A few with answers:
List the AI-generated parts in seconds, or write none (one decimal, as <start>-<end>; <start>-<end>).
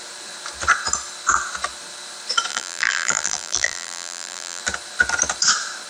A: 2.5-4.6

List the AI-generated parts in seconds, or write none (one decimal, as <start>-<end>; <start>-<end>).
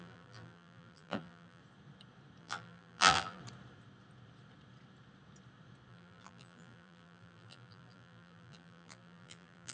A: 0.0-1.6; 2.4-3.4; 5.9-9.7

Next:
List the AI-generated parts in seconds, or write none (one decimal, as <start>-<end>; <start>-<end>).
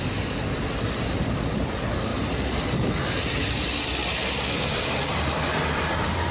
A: 0.0-2.1; 3.0-4.0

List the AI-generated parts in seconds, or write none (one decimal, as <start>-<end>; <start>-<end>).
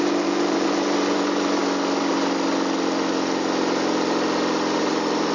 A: 0.0-1.6; 4.8-5.3